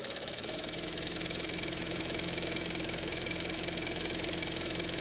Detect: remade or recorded remade